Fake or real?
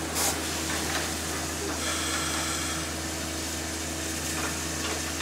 real